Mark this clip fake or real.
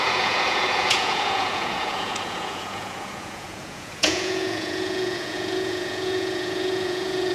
fake